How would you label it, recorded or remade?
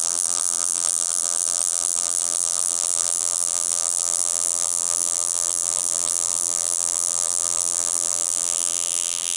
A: remade